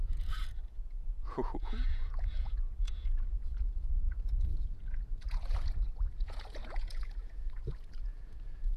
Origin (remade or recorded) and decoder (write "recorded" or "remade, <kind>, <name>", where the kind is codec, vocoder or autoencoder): remade, vocoder, Vocos